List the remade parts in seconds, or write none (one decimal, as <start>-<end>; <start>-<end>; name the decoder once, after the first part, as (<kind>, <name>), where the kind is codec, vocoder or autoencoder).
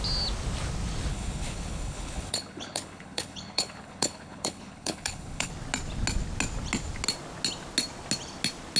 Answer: 1.1-5.5 (codec, HILCodec)